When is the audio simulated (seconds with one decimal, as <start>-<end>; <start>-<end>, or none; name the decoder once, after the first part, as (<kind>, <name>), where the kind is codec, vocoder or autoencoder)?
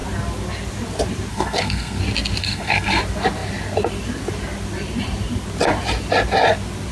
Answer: 1.3-2.0 (codec, SNAC); 2.4-3.0